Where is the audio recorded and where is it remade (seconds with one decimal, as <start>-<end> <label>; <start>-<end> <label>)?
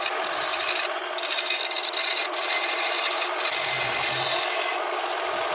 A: 0.0-5.5 recorded